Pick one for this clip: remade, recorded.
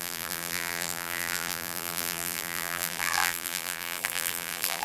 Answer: remade